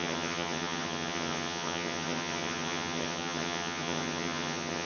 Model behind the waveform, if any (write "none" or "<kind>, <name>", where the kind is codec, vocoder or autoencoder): vocoder, HiFi-GAN